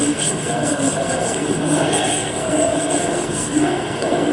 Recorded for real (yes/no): no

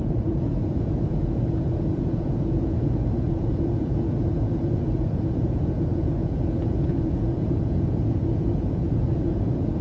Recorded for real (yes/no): no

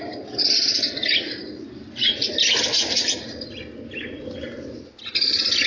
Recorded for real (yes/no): yes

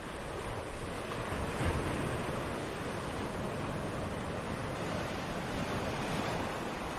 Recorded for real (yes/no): yes